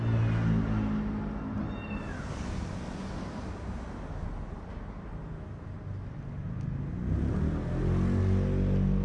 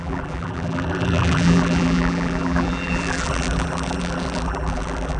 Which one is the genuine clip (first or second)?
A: first